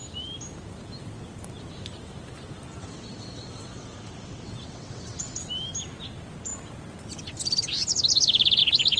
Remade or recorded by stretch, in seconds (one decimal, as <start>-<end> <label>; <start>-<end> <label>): 0.0-2.8 recorded; 2.8-5.5 remade; 5.5-9.0 recorded